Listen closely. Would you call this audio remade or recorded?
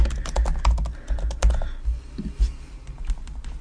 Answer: recorded